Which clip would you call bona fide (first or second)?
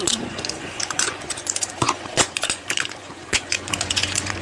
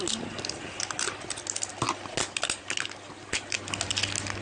second